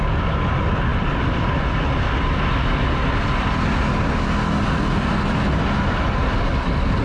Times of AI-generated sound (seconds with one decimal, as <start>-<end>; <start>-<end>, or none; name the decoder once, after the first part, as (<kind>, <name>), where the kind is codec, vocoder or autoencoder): none